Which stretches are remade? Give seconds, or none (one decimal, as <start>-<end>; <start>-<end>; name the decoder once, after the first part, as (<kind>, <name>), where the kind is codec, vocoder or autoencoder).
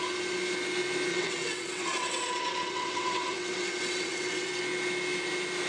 1.1-4.5 (vocoder, WaveNeXt)